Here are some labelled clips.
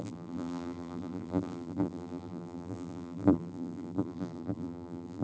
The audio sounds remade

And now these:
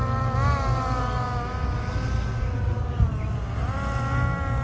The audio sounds recorded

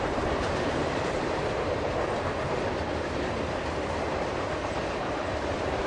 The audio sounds remade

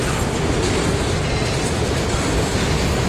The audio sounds recorded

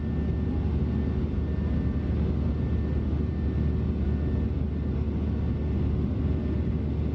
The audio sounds recorded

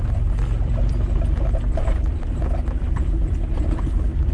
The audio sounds remade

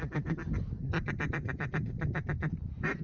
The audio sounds recorded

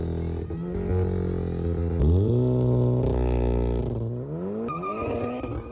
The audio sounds recorded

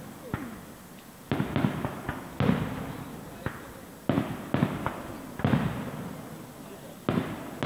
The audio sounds recorded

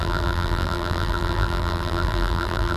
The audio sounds remade